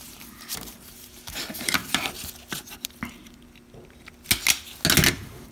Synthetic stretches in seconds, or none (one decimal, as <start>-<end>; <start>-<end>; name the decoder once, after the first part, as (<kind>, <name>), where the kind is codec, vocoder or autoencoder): 0.0-1.8 (vocoder, BigVGAN v2); 5.1-5.5